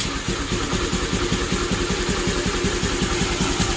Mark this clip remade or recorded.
recorded